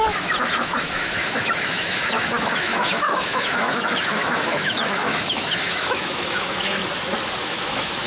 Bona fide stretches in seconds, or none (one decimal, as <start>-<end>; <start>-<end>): 6.8-7.4